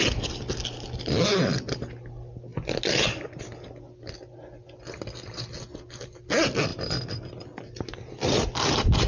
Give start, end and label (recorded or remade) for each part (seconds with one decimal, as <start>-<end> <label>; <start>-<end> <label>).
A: 0.0-9.1 recorded